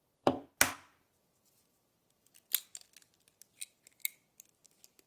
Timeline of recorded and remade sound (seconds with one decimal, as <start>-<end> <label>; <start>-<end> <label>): 0.0-5.1 recorded